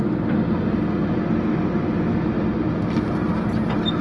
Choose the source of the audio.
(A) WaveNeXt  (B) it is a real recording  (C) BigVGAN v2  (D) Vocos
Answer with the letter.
B